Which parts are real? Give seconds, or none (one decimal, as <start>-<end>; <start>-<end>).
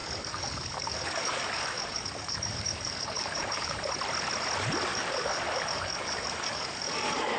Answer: 3.9-4.9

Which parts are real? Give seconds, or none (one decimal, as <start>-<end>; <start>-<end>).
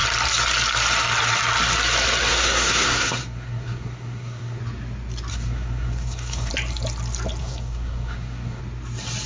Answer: 0.0-2.3; 4.6-5.3; 6.5-7.4; 8.6-9.3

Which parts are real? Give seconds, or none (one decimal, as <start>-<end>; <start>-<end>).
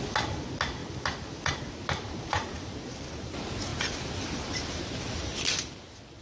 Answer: 0.0-6.2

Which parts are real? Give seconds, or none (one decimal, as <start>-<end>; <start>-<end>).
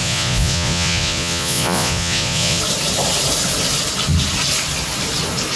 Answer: 2.6-5.6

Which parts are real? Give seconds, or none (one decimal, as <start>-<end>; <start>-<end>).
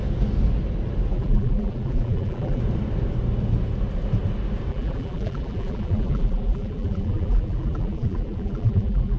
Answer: 0.0-1.1; 2.6-4.7